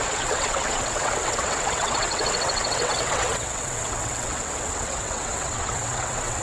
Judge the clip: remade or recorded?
remade